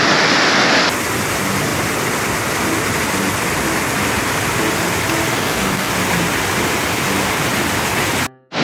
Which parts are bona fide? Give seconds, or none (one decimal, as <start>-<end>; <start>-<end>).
0.0-5.3; 5.9-8.6